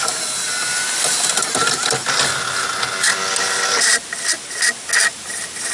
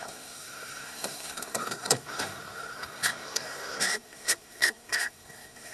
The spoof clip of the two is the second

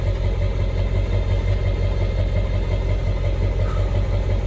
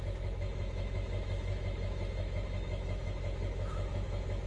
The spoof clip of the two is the second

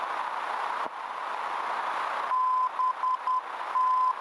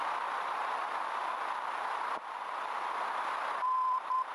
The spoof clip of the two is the second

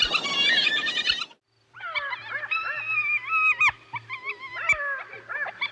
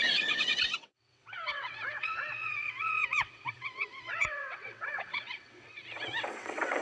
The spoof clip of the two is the second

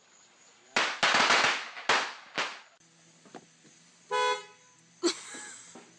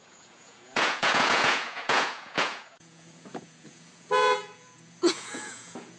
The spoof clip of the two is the second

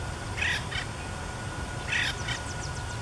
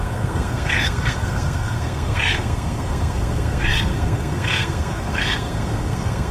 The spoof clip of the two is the second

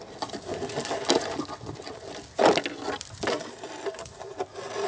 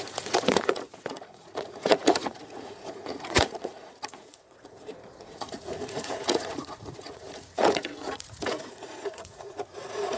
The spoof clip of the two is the second